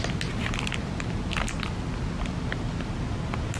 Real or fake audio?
real